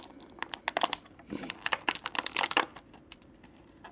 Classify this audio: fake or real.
real